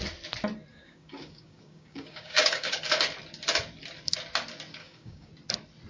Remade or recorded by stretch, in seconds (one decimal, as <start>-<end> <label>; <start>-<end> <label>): 0.0-0.7 recorded; 0.7-2.8 remade; 2.8-4.8 recorded; 4.8-5.3 remade; 5.3-5.9 recorded